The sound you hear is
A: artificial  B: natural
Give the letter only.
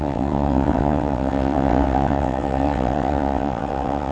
A